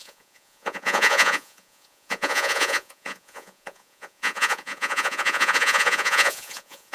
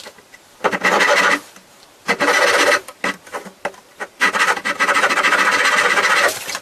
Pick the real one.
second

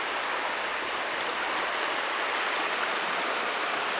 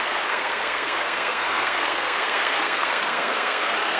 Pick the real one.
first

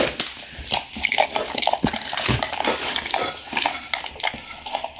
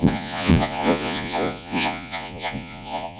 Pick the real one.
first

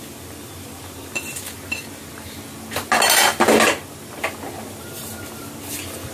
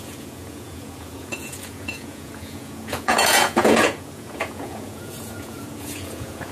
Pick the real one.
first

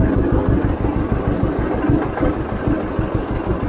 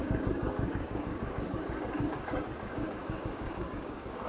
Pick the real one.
first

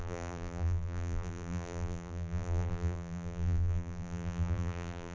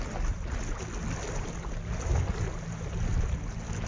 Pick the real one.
second